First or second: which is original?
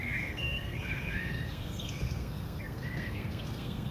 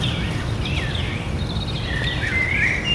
second